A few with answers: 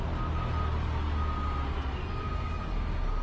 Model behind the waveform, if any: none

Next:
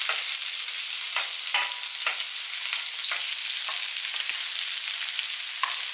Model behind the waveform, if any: none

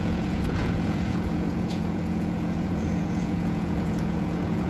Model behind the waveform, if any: vocoder, Vocos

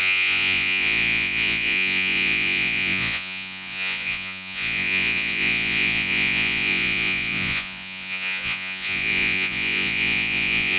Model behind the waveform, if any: vocoder, Vocos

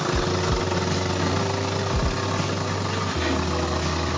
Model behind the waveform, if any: none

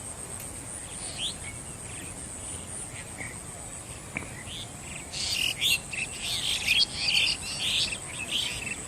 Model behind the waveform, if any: none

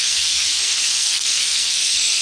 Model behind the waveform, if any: codec, SNAC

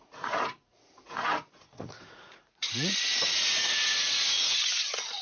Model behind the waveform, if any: vocoder, Vocos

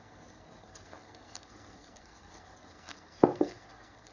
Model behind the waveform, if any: codec, SNAC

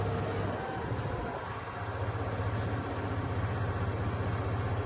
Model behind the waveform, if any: none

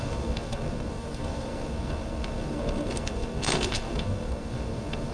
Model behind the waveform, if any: codec, SNAC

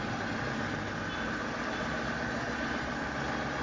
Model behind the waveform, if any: none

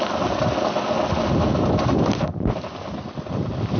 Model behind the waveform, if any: none